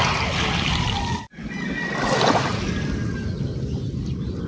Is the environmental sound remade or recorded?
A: recorded